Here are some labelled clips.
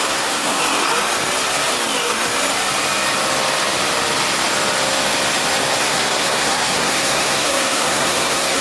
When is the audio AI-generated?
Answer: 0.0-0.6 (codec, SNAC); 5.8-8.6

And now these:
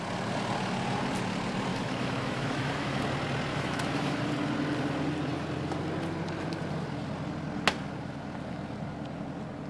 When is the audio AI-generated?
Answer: 1.7-3.0 (autoencoder, DAC-VAE); 3.5-4.2

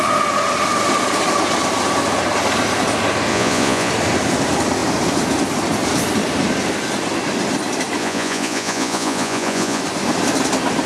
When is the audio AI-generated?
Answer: 3.3-3.9 (vocoder, Vocos); 8.0-9.8

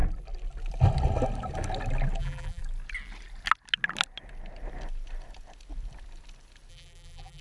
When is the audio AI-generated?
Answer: 2.2-2.6 (vocoder, BigVGAN v2); 6.7-7.4

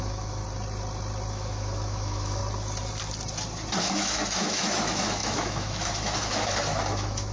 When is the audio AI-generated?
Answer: 0.0-0.4 (autoencoder, DAC-VAE); 1.3-2.4; 3.8-7.3

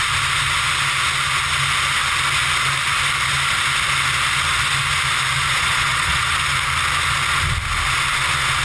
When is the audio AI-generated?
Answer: 5.5-6.3 (vocoder, Vocos)

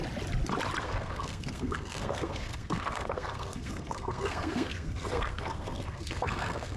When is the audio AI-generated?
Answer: 0.8-6.8 (codec, SNAC)